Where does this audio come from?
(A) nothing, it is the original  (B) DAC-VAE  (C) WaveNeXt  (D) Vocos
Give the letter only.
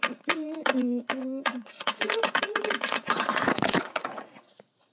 D